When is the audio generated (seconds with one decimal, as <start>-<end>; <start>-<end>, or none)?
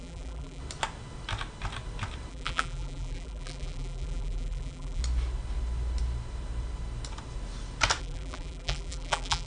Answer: 0.0-0.6; 2.3-5.0; 8.0-9.5